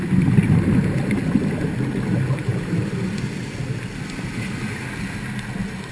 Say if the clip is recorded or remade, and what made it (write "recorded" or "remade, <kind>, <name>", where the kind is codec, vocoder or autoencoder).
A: recorded